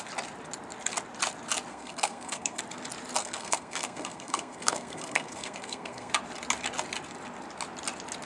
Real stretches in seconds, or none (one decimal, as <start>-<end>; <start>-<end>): 0.0-1.7; 2.6-3.2; 6.1-8.3